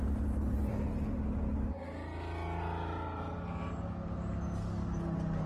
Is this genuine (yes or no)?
yes